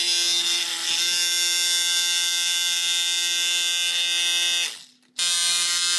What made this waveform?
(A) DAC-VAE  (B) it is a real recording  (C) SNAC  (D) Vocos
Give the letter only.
B